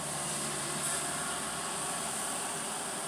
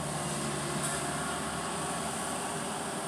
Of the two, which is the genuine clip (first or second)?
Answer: second